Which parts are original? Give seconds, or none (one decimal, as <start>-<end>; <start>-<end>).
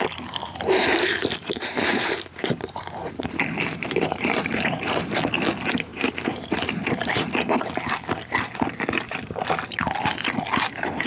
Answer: 0.0-0.4; 5.0-11.1